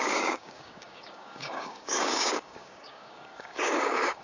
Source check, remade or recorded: remade